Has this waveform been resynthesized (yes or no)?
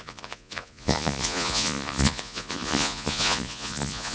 yes